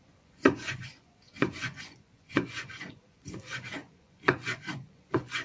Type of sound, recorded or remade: remade